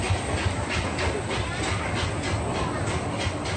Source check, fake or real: real